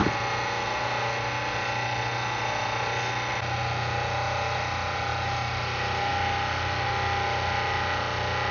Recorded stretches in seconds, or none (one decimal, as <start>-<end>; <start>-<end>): 0.0-8.5